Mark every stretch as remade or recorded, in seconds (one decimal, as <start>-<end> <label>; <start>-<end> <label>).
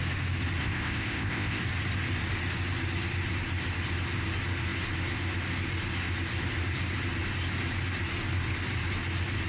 0.0-0.6 recorded; 0.6-1.6 remade; 1.6-9.5 recorded